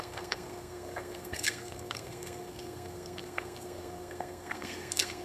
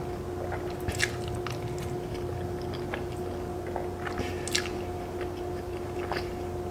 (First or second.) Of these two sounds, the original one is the second